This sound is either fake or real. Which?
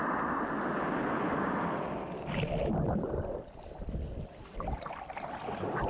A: real